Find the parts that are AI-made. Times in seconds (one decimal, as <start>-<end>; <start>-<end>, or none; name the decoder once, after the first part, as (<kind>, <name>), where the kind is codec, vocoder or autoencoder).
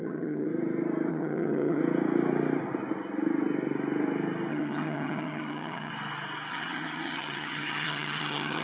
0.0-0.5 (vocoder, HiFi-GAN); 1.1-1.8; 4.5-5.9; 6.5-8.6